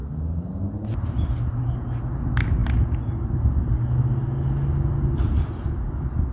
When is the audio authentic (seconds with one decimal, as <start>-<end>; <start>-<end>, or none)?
0.0-6.3